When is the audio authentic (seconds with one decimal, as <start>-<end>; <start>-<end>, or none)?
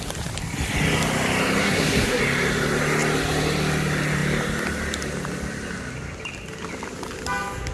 0.0-1.6; 2.2-7.7